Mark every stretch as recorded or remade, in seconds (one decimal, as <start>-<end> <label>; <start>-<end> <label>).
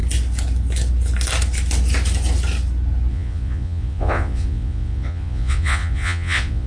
0.0-3.1 recorded; 3.1-6.7 remade